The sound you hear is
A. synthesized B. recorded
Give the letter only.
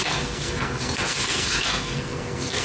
A